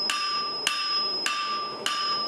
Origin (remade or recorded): recorded